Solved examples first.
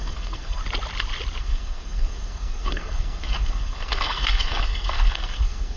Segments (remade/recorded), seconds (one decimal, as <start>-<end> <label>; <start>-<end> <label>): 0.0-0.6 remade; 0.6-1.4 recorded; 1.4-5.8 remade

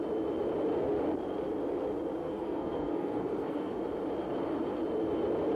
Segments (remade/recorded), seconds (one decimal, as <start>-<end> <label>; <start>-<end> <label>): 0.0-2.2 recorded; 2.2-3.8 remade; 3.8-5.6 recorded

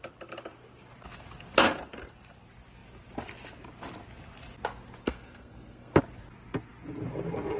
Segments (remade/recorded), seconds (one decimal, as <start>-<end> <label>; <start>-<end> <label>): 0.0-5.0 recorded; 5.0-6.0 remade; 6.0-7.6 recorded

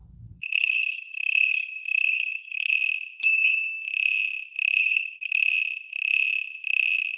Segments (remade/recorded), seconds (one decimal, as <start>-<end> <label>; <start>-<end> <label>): 0.0-2.7 remade; 2.7-3.2 recorded; 3.2-3.8 remade; 3.8-4.8 recorded; 4.8-5.4 remade; 5.4-7.2 recorded